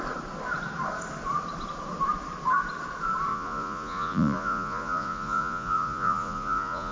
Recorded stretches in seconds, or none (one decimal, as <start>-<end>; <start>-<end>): 0.0-3.3